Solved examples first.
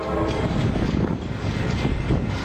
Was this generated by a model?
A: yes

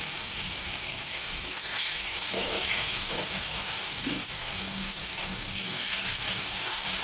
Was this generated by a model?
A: yes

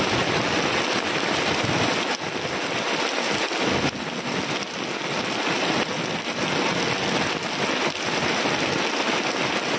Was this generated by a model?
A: no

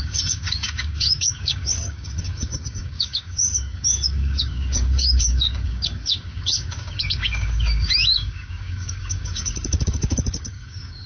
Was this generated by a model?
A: yes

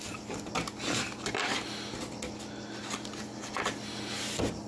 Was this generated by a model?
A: no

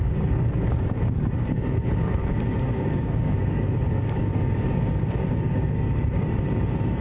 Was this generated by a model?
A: yes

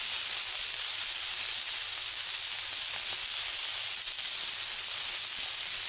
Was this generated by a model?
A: no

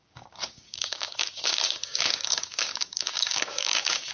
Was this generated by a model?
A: yes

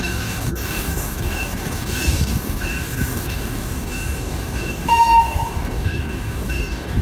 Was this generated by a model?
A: yes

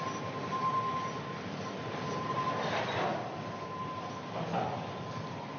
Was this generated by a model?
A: no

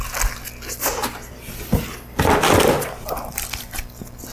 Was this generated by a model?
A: no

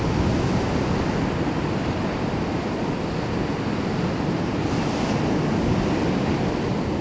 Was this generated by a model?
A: no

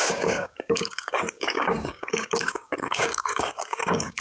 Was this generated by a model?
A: yes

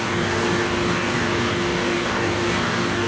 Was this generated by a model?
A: yes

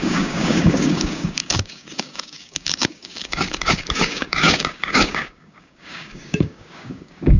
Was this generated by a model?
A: yes